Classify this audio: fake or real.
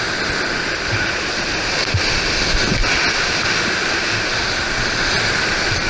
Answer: real